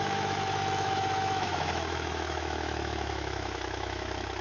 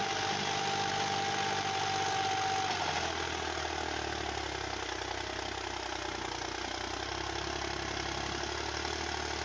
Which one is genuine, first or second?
second